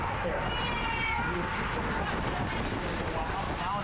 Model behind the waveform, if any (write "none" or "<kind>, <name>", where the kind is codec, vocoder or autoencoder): none